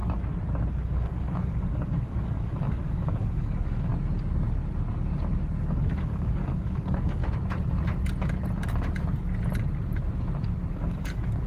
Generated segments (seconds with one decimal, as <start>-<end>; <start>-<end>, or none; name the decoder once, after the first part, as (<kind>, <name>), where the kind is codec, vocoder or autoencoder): 0.7-3.9 (codec, DAC); 5.6-7.2; 10.7-11.5